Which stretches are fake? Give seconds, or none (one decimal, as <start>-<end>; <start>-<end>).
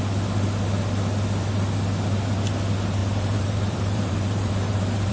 3.0-5.1